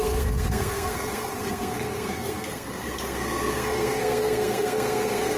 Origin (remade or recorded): remade